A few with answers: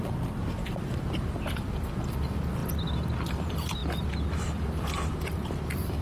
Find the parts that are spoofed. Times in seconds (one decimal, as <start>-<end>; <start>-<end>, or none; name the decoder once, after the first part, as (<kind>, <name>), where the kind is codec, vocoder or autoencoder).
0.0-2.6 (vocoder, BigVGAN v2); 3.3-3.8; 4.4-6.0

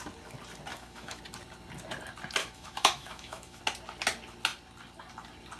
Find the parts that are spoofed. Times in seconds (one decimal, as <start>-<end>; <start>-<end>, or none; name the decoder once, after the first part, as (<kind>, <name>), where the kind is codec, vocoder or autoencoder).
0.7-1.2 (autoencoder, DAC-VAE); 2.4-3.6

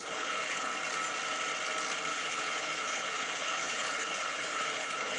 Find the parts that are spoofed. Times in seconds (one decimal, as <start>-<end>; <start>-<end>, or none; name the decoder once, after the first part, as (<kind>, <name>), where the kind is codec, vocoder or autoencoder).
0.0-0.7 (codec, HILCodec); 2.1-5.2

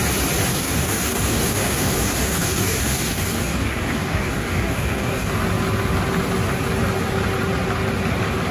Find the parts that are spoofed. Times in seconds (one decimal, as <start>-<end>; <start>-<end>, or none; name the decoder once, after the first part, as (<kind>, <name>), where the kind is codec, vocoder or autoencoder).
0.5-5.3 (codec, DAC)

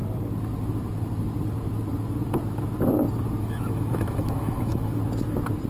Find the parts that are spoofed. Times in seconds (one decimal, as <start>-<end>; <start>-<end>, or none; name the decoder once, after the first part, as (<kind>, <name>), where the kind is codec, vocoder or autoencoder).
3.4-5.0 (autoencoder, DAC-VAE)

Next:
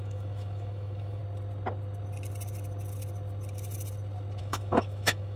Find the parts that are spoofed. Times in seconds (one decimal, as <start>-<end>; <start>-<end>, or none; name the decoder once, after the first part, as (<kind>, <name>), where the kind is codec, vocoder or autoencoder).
0.0-1.2 (autoencoder, DAC-VAE); 4.4-5.4

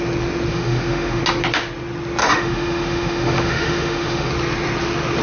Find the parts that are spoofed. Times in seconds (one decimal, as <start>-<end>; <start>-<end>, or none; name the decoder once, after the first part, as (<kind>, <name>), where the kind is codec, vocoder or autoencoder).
0.5-1.2 (autoencoder, DAC-VAE); 2.2-4.3